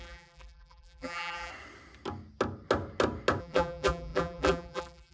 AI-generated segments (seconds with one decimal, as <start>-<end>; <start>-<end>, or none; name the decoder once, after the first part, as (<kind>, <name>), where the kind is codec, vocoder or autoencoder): 0.0-1.5 (vocoder, BigVGAN v2); 3.4-5.1